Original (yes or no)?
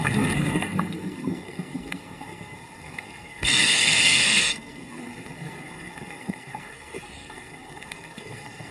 no